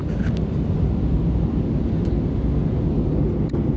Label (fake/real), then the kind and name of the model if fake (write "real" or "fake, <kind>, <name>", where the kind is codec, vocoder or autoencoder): real